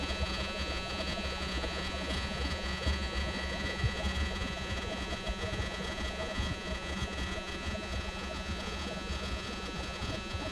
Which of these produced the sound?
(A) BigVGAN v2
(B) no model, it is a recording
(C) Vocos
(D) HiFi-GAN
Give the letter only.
C